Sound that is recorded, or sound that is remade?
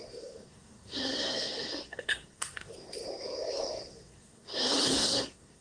remade